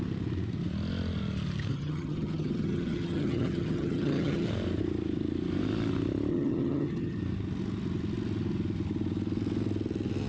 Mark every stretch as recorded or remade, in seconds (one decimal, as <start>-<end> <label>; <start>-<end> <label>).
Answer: 0.0-1.7 recorded; 1.7-4.5 remade; 4.5-6.3 recorded; 6.3-7.2 remade; 7.2-10.3 recorded